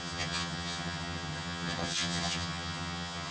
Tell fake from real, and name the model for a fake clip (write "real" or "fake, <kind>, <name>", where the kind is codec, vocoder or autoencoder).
fake, vocoder, HiFi-GAN